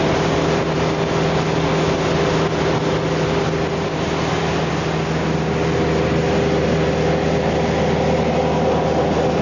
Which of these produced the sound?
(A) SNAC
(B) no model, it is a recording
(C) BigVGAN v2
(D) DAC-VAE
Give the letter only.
B